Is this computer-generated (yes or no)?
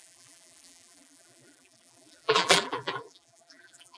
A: yes